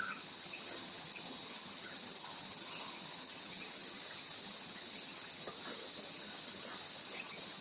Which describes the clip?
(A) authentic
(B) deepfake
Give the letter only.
B